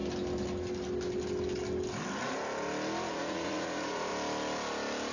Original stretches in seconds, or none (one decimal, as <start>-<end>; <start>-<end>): 0.0-3.1; 4.1-5.1